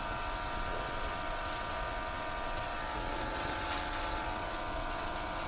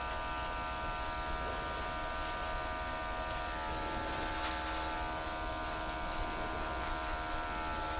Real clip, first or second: second